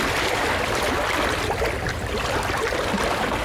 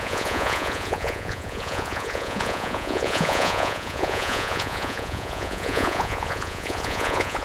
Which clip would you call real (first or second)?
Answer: first